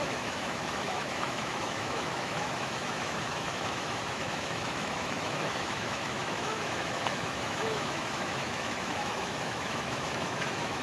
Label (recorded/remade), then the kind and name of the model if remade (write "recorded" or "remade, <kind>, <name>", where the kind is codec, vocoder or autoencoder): remade, autoencoder, DAC-VAE